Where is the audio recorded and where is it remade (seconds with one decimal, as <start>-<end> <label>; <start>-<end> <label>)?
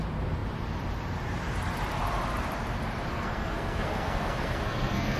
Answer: 0.0-3.1 recorded; 3.1-5.2 remade